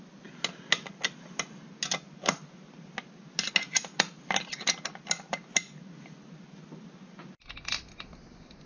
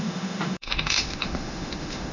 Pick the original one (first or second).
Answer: first